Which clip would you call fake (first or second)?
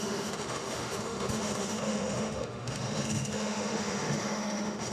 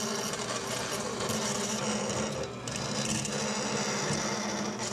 first